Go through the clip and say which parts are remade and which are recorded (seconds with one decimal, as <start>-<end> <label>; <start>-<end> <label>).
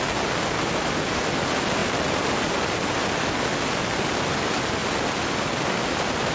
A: 0.0-6.3 recorded